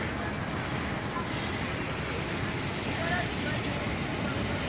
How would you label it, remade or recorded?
recorded